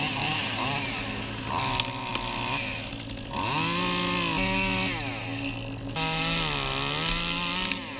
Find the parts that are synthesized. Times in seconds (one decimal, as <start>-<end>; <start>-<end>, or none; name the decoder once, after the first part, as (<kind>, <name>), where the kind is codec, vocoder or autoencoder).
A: none